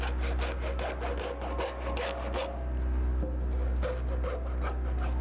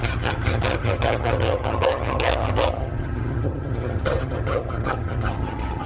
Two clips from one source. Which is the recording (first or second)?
first